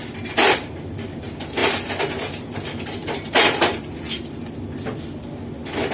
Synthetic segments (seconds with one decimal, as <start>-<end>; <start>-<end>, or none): none